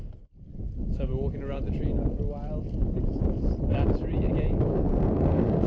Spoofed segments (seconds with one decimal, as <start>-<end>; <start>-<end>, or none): 4.7-5.7